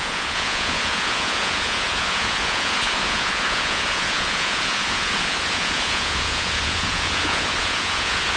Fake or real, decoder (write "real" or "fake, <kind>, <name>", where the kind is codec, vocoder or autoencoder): fake, vocoder, Vocos